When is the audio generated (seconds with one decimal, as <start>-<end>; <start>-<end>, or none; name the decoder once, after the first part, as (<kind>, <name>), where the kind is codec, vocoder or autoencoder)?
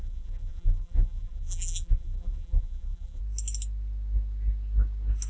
0.0-3.2 (vocoder, BigVGAN v2)